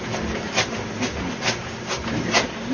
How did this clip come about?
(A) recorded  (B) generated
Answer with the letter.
A